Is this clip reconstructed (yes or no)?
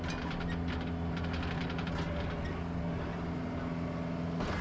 no